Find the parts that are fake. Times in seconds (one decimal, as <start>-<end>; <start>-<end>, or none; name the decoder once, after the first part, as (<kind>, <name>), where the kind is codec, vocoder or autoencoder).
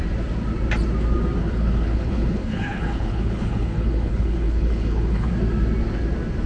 1.4-5.3 (codec, HILCodec)